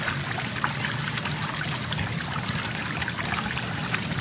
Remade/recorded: recorded